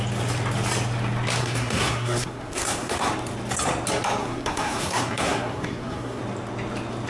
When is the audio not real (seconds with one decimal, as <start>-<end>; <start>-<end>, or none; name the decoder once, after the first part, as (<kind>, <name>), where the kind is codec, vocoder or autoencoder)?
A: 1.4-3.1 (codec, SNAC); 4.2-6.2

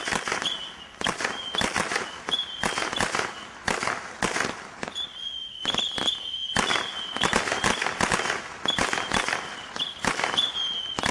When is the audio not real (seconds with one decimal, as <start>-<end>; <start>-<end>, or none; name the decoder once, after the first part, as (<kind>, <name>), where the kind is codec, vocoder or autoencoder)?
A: 0.0-6.4 (vocoder, BigVGAN v2); 8.4-11.1

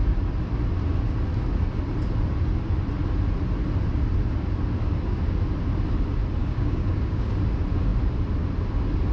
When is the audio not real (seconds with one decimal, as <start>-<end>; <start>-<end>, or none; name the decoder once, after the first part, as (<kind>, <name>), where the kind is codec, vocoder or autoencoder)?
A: 6.4-7.3 (codec, DAC)